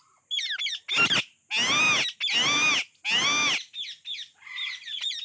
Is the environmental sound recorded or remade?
recorded